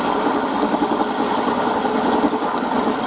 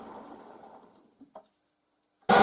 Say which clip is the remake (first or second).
first